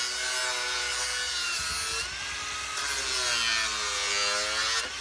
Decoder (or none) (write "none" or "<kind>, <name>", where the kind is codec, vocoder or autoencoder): none